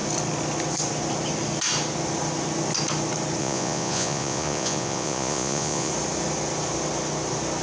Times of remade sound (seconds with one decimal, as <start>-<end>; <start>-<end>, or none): 3.4-5.9